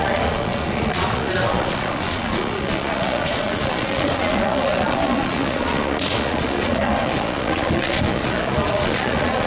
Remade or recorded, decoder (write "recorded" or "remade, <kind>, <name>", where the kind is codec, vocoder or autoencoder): remade, vocoder, Vocos